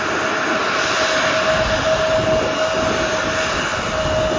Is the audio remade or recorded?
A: recorded